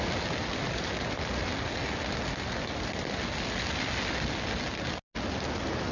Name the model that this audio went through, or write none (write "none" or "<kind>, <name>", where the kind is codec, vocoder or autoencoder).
none